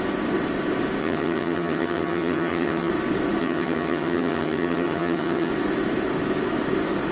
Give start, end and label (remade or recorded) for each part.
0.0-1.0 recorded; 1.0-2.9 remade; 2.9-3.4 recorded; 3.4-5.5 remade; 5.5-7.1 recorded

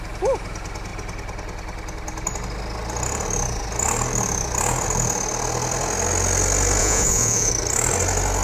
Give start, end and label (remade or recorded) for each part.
0.0-6.8 recorded; 6.8-7.5 remade; 7.5-8.4 recorded

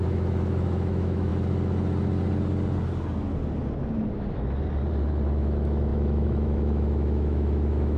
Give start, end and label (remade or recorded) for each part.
0.0-1.3 remade; 1.3-5.3 recorded; 5.3-8.0 remade

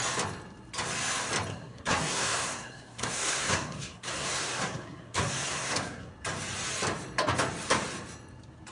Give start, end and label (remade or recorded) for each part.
0.0-1.5 recorded; 1.5-6.1 remade; 6.1-8.7 recorded

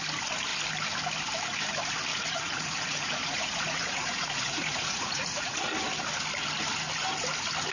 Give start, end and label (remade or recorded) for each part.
0.0-2.1 recorded; 2.1-5.7 remade; 5.7-7.7 recorded

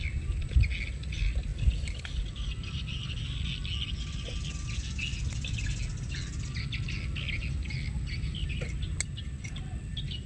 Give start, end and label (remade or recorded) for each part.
0.0-10.3 recorded